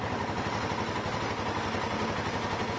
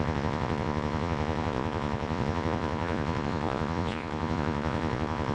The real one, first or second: first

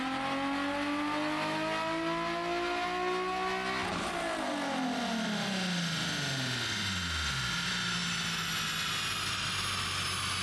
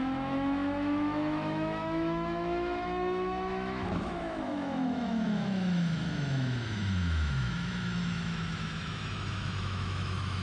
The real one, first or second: first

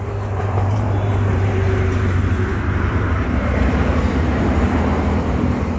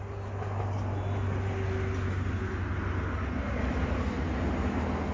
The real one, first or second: second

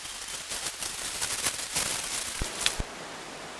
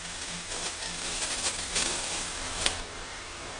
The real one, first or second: first